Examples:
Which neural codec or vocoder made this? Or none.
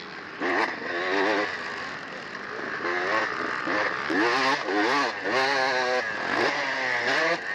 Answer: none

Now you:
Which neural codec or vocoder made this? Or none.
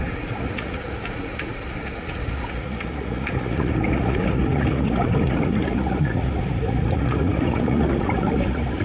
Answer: vocoder, Vocos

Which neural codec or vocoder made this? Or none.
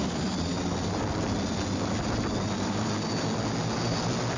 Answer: none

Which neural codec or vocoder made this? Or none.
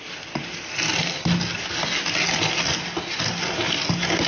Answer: none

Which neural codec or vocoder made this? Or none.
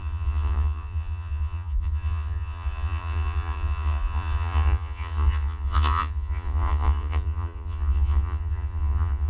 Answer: vocoder, Vocos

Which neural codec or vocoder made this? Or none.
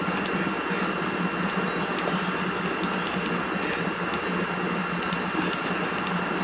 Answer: none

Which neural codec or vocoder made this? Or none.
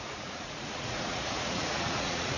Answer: vocoder, Vocos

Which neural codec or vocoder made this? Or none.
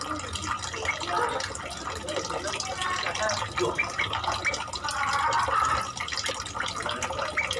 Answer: none